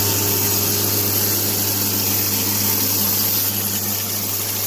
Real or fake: real